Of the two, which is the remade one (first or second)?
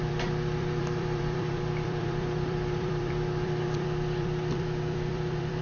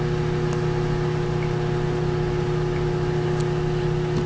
first